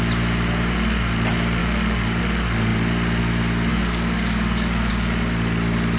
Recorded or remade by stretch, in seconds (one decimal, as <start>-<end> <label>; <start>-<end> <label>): 0.0-1.6 recorded; 1.6-2.2 remade; 2.2-3.7 recorded; 3.7-4.9 remade; 4.9-6.0 recorded